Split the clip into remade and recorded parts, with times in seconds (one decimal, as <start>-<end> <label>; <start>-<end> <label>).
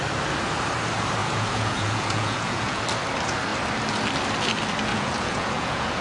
0.0-1.2 recorded; 1.2-2.8 remade; 2.8-4.9 recorded; 4.9-6.0 remade